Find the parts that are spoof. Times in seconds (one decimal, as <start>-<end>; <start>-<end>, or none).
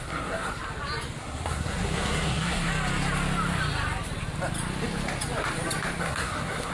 0.0-0.5; 1.2-2.7; 6.0-6.7